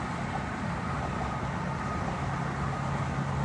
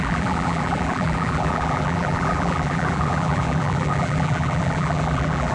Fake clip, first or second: second